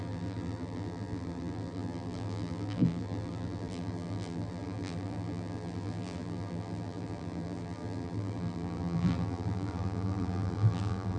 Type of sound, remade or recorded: remade